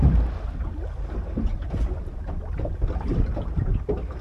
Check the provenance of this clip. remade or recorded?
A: recorded